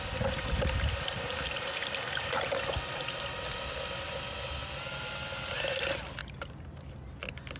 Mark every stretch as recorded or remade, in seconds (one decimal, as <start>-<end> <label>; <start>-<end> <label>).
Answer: 0.0-7.6 recorded